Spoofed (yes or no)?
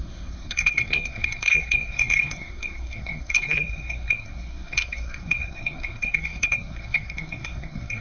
yes